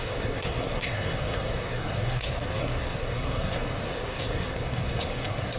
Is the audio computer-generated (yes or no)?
yes